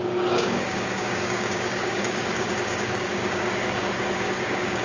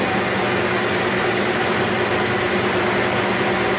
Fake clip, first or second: first